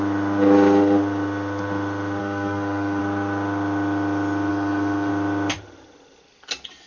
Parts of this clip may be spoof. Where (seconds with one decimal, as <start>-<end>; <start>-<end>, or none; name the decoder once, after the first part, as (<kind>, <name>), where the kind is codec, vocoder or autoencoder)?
2.2-3.0 (codec, DAC); 4.5-5.1